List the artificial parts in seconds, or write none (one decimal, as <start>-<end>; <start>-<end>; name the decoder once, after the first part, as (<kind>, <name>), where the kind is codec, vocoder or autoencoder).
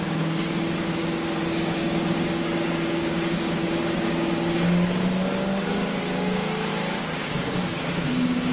0.0-8.5 (codec, DAC)